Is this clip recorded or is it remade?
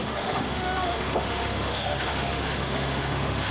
remade